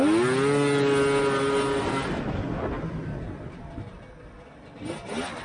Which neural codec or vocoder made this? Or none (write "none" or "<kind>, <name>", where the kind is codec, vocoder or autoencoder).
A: none